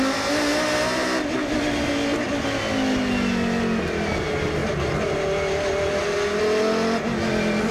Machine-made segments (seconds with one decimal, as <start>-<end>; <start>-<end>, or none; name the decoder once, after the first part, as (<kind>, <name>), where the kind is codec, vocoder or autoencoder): none